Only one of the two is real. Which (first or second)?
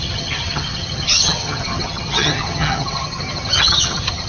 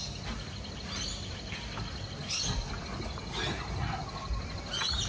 second